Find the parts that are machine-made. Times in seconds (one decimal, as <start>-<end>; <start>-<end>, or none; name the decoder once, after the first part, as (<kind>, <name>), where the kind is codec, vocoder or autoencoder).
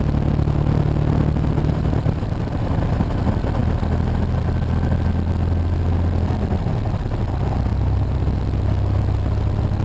1.6-3.2 (vocoder, BigVGAN v2); 7.7-8.4